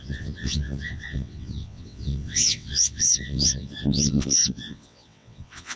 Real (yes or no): no